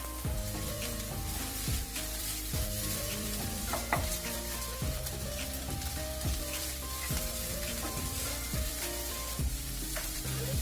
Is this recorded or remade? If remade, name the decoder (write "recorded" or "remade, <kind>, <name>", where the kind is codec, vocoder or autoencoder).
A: remade, vocoder, BigVGAN v2